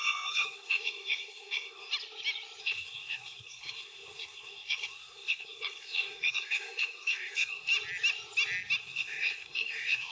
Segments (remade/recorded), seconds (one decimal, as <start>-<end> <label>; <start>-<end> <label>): 0.0-1.9 remade; 1.9-2.6 recorded; 2.6-7.7 remade; 7.7-8.8 recorded; 8.8-10.1 remade